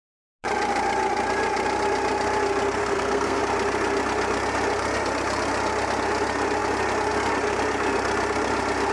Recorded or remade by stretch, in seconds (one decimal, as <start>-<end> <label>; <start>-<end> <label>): 0.0-2.8 recorded; 2.8-3.4 remade; 3.4-8.9 recorded